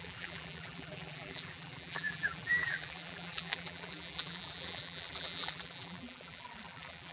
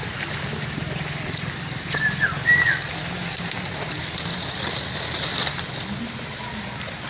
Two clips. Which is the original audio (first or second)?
second